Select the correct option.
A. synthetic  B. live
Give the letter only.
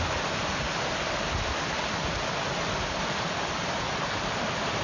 B